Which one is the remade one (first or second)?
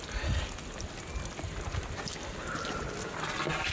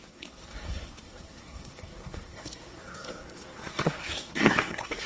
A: second